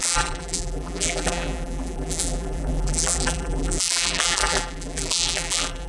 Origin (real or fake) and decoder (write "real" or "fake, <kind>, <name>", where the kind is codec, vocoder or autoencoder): fake, vocoder, BigVGAN v2